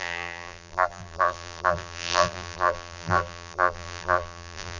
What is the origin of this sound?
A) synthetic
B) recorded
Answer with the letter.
A